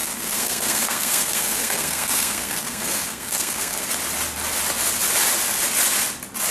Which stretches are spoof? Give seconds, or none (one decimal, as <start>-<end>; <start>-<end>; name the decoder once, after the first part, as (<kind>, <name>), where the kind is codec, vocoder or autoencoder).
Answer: 0.0-3.9 (codec, SNAC)